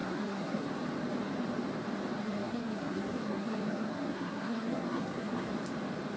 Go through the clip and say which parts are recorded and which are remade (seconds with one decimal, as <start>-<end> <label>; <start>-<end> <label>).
0.0-0.7 remade; 0.7-2.2 recorded; 2.2-5.5 remade; 5.5-6.2 recorded